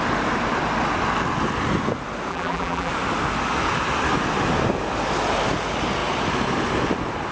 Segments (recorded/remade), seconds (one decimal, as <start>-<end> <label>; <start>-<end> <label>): 0.0-2.3 recorded; 2.3-2.9 remade; 2.9-7.3 recorded

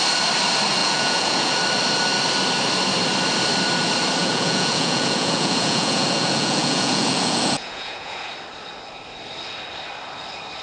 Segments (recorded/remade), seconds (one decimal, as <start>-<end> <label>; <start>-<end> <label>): 0.0-0.8 recorded; 0.8-1.5 remade; 1.5-4.2 recorded; 4.2-8.3 remade; 8.3-10.6 recorded

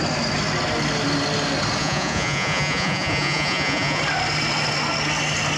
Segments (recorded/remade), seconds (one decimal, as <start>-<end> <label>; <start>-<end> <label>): 0.0-1.8 recorded; 1.8-4.0 remade; 4.0-5.6 recorded

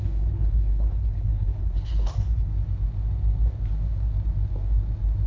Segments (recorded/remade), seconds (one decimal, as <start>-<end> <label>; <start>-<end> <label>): 0.0-2.5 remade; 2.5-5.3 recorded

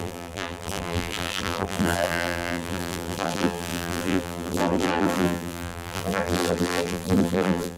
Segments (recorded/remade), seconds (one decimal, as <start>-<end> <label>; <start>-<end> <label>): 0.0-7.8 remade

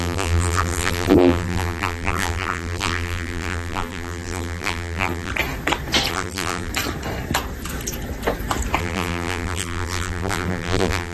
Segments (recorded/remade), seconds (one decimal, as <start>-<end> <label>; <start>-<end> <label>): 0.0-5.3 remade; 5.3-6.1 recorded; 6.1-6.7 remade; 6.7-8.8 recorded; 8.8-11.1 remade

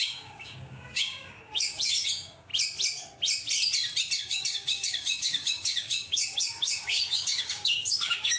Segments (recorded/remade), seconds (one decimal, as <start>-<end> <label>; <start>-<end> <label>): 0.0-2.5 remade; 2.5-4.2 recorded; 4.2-8.4 remade

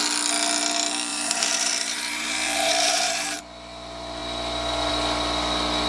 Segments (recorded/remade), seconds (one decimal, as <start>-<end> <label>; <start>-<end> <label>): 0.0-1.1 recorded; 1.1-3.4 remade; 3.4-5.9 recorded